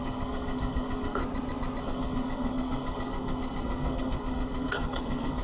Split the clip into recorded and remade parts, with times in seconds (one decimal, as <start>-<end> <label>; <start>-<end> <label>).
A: 0.0-1.2 remade; 1.2-1.8 recorded; 1.8-5.4 remade